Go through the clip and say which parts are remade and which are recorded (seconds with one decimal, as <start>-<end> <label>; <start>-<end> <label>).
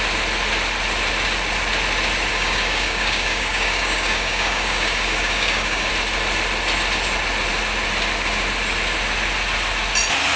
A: 0.0-2.3 recorded; 2.3-5.9 remade; 5.9-10.4 recorded